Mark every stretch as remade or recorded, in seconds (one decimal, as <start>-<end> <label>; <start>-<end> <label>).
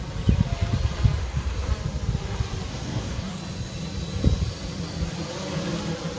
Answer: 0.0-1.2 recorded; 1.2-1.7 remade; 1.7-2.7 recorded; 2.7-3.4 remade; 3.4-6.2 recorded